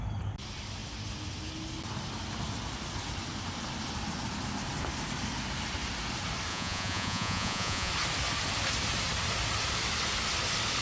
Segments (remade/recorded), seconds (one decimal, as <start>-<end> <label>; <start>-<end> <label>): 0.0-6.5 recorded; 6.5-7.9 remade; 7.9-10.8 recorded